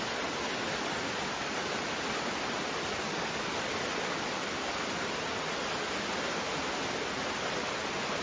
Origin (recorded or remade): recorded